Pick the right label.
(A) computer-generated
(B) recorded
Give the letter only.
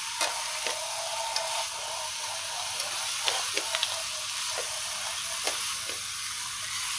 B